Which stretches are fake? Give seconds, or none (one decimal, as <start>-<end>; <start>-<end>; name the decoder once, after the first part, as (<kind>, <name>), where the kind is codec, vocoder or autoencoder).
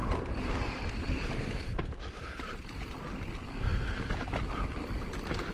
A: 0.0-3.3 (vocoder, BigVGAN v2)